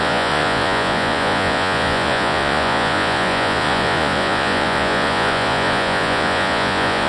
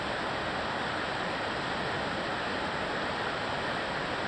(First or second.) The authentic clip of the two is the second